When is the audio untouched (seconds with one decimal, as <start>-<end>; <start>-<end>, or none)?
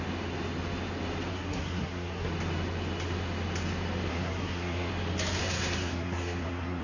0.0-1.3; 2.3-4.1; 4.9-5.4